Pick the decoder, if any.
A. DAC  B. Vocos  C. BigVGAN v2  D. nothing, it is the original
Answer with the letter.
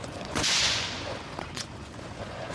B